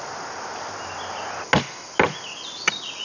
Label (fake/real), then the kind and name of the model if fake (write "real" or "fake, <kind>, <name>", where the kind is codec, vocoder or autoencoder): real